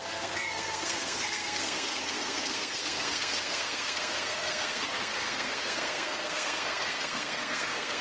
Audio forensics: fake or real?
fake